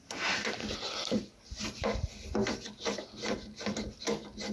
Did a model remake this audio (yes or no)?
no